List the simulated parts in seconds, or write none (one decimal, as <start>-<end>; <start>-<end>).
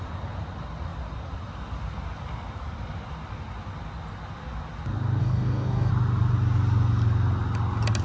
5.2-5.9